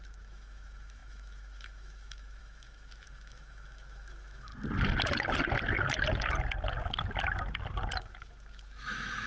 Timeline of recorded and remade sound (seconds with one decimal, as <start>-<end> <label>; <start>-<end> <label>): 0.0-4.5 remade; 4.5-8.0 recorded; 8.0-9.3 remade